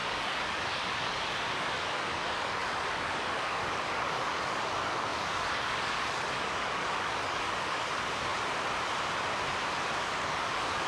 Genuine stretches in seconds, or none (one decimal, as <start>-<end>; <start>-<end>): 8.3-10.0